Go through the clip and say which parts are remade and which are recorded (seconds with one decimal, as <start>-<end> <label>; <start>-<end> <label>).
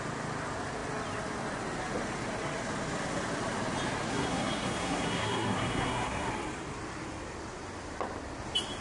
0.0-4.1 recorded; 4.1-6.3 remade; 6.3-8.8 recorded